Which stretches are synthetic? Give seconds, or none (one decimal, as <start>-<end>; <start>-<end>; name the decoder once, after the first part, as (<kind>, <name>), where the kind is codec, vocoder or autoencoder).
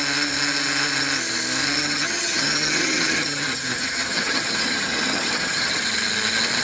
1.8-5.8 (vocoder, HiFi-GAN)